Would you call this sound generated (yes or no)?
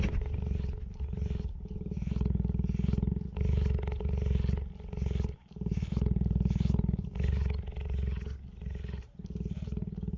no